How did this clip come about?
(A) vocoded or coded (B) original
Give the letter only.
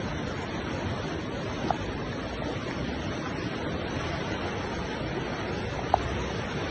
B